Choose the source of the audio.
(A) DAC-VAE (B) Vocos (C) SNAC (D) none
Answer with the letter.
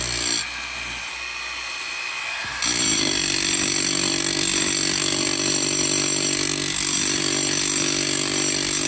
D